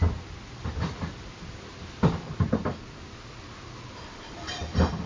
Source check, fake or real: real